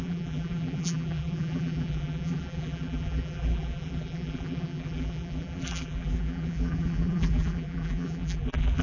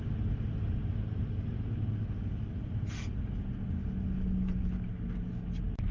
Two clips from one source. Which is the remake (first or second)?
first